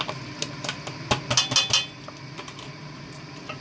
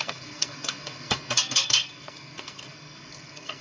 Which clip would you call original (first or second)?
first